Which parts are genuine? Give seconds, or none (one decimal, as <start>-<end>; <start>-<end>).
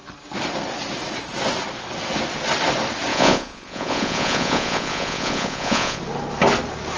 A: 0.0-3.1; 6.0-7.0